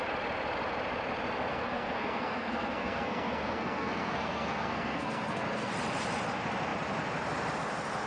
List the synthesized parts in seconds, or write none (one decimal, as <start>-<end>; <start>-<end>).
1.5-5.7